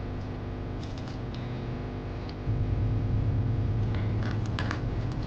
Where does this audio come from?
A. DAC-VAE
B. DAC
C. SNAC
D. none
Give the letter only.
D